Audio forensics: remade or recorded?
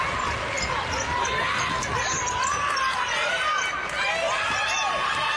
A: recorded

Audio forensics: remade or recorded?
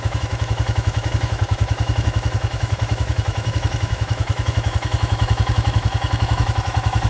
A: remade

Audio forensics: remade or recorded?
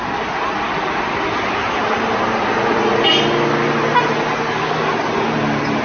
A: recorded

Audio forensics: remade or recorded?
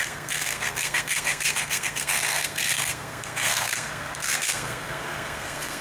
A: remade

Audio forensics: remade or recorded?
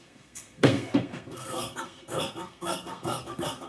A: remade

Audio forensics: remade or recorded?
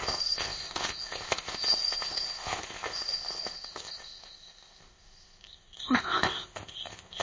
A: remade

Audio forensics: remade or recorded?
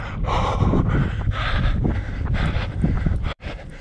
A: remade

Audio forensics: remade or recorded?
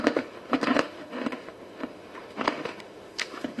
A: remade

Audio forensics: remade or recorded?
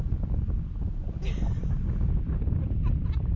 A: recorded